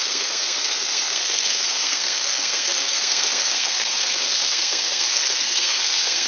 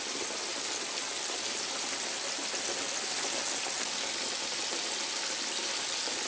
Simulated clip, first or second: first